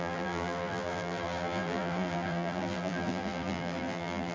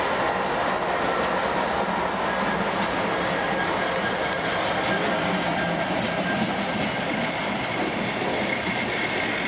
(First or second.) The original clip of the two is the second